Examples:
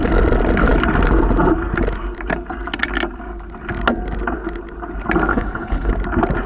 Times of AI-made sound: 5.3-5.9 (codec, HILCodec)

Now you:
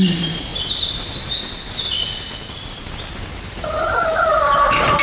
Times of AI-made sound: 0.0-0.5 (vocoder, BigVGAN v2); 3.2-5.0

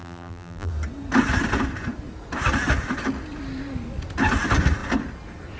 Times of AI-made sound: 0.0-0.7 (vocoder, BigVGAN v2)

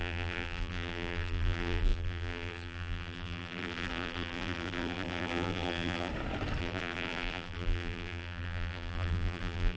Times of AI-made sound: 0.0-6.1 (vocoder, BigVGAN v2); 6.6-9.8

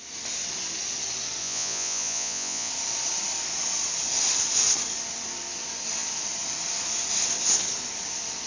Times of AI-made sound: 1.4-2.7 (vocoder, Vocos)

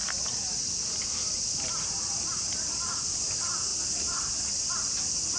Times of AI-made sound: none

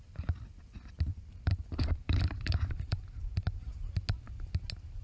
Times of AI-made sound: 1.1-3.2 (vocoder, BigVGAN v2)

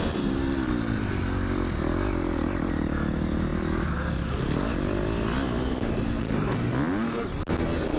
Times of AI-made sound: none